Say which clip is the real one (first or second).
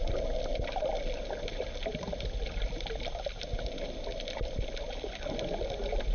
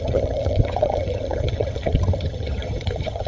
first